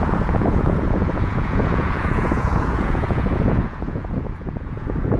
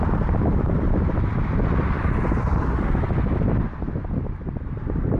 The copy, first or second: first